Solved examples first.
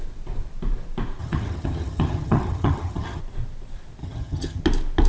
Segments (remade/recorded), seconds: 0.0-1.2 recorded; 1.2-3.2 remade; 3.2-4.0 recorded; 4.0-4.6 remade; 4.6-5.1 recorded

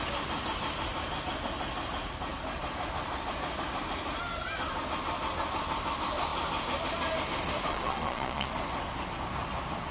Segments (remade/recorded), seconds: 0.0-7.7 recorded; 7.7-8.5 remade; 8.5-9.9 recorded

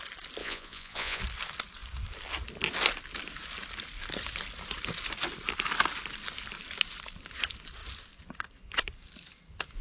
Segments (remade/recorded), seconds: 0.0-0.4 recorded; 0.4-1.2 remade; 1.2-9.8 recorded

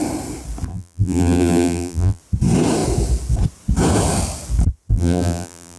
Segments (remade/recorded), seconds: 0.0-0.7 recorded; 0.7-2.2 remade; 2.2-4.9 recorded; 4.9-5.8 remade